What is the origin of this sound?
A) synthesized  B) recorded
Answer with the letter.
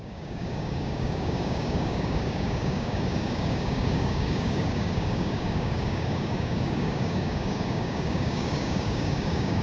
A